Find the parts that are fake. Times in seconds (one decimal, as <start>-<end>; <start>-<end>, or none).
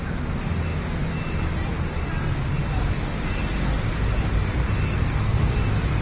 4.9-5.5